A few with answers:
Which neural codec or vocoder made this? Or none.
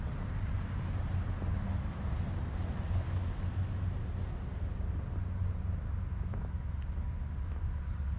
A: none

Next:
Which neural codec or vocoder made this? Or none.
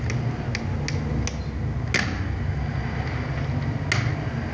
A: none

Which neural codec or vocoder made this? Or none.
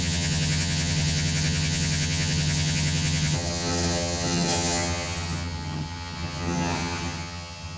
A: vocoder, HiFi-GAN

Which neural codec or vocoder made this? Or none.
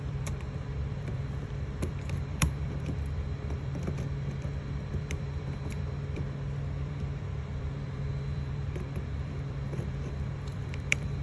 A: vocoder, BigVGAN v2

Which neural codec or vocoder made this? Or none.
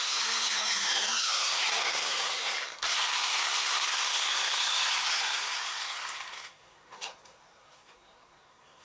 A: codec, SNAC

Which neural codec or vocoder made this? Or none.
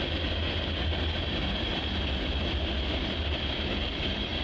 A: none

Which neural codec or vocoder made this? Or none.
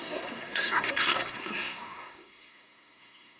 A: codec, SNAC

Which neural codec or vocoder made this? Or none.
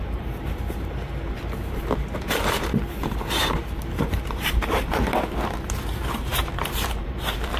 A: vocoder, BigVGAN v2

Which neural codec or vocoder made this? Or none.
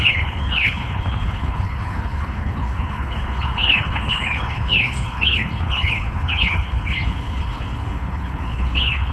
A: codec, HILCodec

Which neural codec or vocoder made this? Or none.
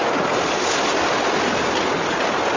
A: none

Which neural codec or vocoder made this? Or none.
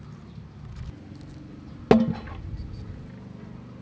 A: none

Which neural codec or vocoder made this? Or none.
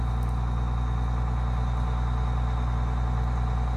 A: none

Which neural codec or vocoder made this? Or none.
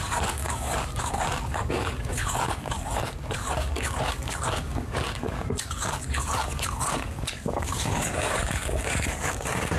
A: codec, DAC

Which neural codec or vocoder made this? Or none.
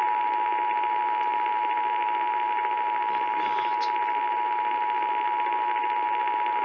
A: none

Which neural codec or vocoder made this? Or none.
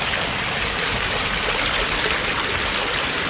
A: none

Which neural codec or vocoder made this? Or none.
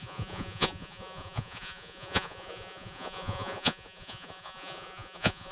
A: vocoder, Vocos